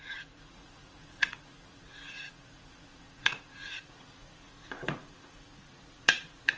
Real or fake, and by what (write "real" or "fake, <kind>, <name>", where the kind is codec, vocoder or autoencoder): fake, vocoder, Vocos